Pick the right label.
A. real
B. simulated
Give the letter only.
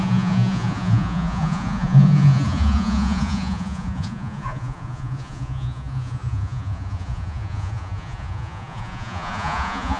B